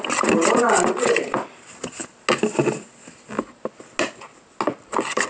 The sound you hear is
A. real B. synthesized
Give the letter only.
A